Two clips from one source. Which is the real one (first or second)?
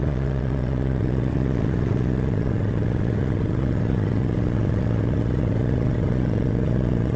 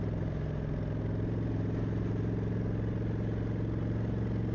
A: second